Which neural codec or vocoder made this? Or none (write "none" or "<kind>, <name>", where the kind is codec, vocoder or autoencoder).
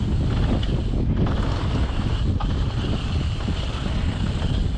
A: none